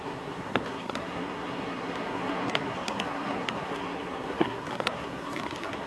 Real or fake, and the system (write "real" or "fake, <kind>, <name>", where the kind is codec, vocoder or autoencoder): fake, codec, SNAC